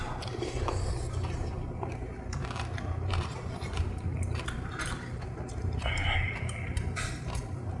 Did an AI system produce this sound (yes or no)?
yes